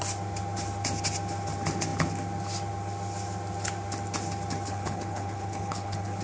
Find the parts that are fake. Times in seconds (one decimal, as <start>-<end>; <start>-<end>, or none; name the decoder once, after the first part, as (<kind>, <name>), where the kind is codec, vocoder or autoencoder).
4.7-6.2 (codec, HILCodec)